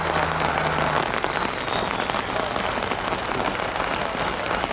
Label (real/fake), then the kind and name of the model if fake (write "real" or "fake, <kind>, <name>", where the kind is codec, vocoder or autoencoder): real